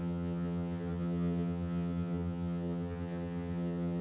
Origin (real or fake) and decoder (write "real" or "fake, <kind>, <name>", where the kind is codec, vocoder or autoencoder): fake, vocoder, HiFi-GAN